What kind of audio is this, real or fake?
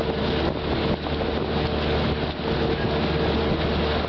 real